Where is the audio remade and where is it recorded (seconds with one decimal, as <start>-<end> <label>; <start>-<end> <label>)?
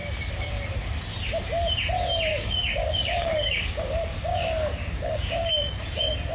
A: 0.0-2.3 recorded; 2.3-5.5 remade; 5.5-6.3 recorded